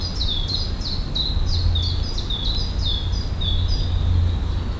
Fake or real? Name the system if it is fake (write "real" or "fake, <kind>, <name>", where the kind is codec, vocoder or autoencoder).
real